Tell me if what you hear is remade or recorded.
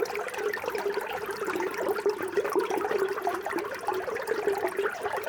recorded